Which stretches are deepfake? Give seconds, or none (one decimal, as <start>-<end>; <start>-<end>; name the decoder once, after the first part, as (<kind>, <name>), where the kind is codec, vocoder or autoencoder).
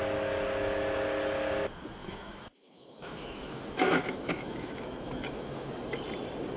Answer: 2.0-5.7 (autoencoder, DAC-VAE)